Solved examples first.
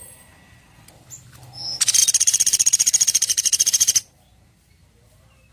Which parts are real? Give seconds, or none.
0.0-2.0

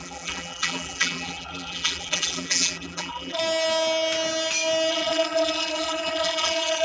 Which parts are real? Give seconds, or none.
3.4-4.9

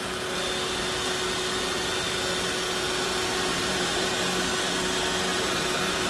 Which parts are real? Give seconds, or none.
0.0-3.5; 4.1-5.3

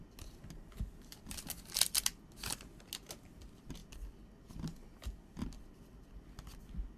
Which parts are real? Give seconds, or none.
0.0-7.0

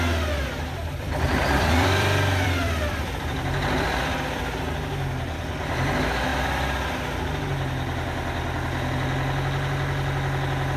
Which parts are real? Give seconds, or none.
0.0-0.8; 4.4-6.3; 7.0-10.8